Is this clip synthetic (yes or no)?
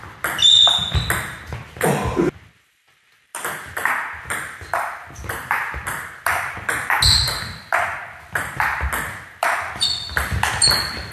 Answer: no